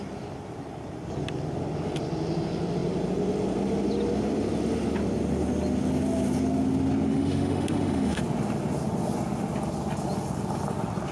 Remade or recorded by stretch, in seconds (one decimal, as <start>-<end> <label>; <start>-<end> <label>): 0.0-7.1 recorded; 7.1-8.2 remade; 8.2-11.1 recorded